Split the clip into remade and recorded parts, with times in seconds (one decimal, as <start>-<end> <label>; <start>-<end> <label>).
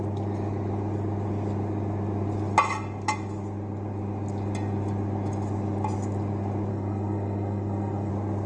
0.0-6.7 recorded; 6.7-8.1 remade; 8.1-8.5 recorded